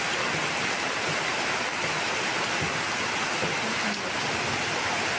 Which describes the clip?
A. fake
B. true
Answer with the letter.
B